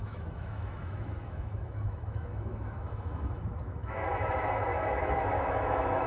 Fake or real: fake